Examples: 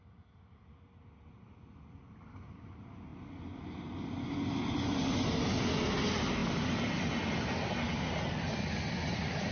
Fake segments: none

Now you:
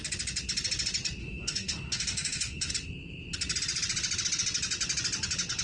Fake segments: 1.2-2.7 (autoencoder, DAC-VAE)

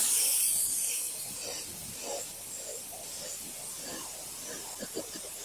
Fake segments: 0.6-1.3 (codec, SNAC)

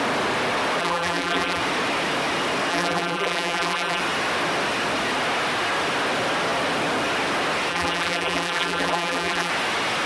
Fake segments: 0.8-1.6 (vocoder, BigVGAN v2); 2.7-4.0; 7.7-9.5

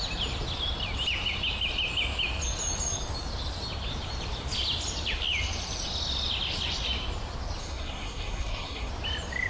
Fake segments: 7.6-8.9 (codec, SNAC)

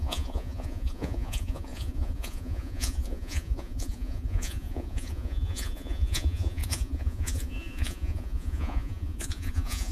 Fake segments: 0.0-9.9 (vocoder, Vocos)

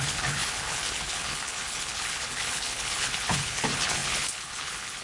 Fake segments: 0.0-5.0 (codec, HILCodec)